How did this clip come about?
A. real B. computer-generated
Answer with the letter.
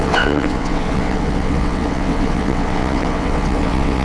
B